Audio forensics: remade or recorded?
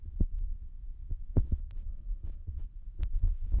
remade